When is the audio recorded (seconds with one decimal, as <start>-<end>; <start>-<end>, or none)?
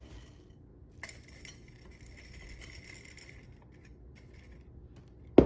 0.0-5.5